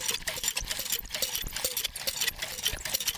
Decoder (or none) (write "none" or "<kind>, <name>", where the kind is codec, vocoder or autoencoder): none